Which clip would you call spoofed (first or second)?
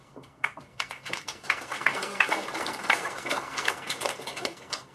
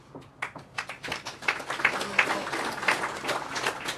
first